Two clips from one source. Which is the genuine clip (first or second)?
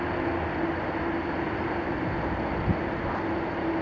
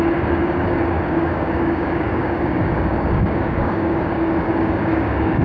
first